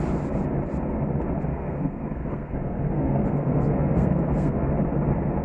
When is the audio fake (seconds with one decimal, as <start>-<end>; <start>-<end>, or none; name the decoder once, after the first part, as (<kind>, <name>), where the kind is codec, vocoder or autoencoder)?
1.5-4.7 (codec, SNAC)